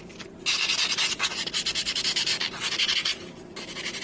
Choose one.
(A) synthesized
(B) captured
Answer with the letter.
B